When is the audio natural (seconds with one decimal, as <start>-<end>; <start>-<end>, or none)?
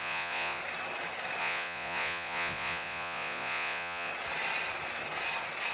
0.6-1.4; 4.1-5.7